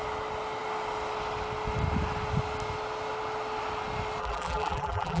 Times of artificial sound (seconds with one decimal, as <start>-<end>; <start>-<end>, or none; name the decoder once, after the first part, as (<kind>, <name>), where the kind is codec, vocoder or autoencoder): 4.2-5.2 (vocoder, BigVGAN v2)